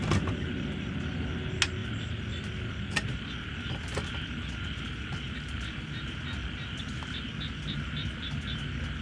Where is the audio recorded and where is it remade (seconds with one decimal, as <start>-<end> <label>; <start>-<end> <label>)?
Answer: 0.0-9.0 recorded